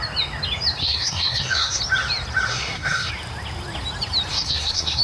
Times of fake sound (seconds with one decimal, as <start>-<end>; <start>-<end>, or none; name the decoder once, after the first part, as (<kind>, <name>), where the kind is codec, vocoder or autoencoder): 0.8-1.8 (codec, SNAC); 2.5-3.1; 4.3-5.0